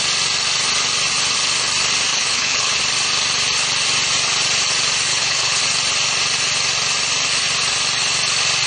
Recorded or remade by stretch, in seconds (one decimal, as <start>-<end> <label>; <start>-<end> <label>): 0.0-2.1 recorded; 2.1-2.8 remade; 2.8-5.1 recorded; 5.1-5.6 remade; 5.6-8.7 recorded